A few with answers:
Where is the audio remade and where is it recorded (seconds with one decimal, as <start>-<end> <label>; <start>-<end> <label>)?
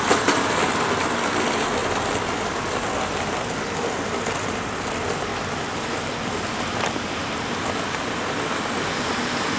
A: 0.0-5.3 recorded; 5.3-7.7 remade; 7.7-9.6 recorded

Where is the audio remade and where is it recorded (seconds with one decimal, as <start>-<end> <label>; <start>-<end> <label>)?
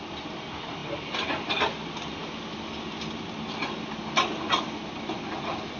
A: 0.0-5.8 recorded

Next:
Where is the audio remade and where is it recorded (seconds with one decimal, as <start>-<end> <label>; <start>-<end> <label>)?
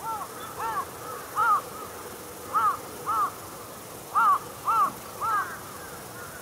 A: 0.0-6.4 recorded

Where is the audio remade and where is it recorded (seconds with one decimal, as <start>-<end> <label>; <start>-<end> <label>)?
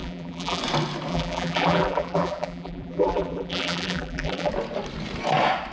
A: 0.0-0.6 remade; 0.6-1.1 recorded; 1.1-4.5 remade; 4.5-5.7 recorded